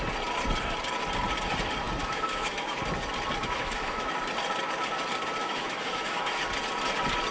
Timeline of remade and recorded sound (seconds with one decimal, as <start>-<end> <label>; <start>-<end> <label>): 0.0-2.0 recorded; 2.0-2.8 remade; 2.8-3.4 recorded; 3.4-4.1 remade; 4.1-5.4 recorded; 5.4-6.4 remade; 6.4-7.3 recorded